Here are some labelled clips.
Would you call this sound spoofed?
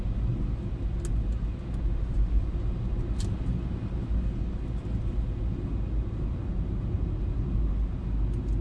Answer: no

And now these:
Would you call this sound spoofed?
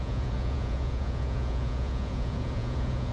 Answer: yes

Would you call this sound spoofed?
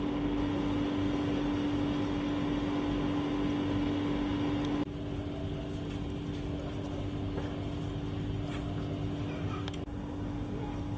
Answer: no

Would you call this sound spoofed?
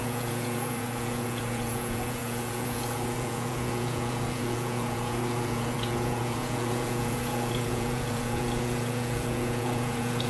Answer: yes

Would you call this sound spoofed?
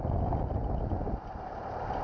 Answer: no